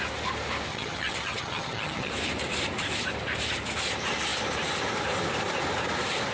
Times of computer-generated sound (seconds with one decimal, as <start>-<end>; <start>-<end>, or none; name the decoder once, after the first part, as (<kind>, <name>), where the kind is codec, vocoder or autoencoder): 0.7-2.1 (vocoder, HiFi-GAN)

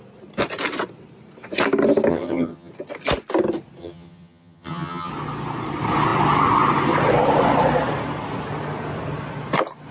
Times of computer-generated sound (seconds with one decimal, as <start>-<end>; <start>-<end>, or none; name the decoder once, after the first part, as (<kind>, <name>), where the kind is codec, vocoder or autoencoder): 2.1-2.7 (vocoder, HiFi-GAN); 3.8-5.1

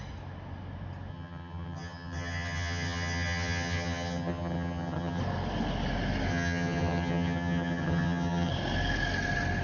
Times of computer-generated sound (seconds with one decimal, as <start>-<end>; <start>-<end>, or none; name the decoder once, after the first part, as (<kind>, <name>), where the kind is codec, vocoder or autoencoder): 1.1-5.2 (vocoder, HiFi-GAN); 6.3-8.5

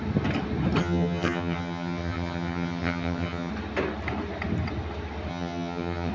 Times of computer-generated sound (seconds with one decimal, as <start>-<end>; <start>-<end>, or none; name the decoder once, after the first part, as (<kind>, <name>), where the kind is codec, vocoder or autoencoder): 0.8-3.5 (vocoder, HiFi-GAN); 5.3-6.1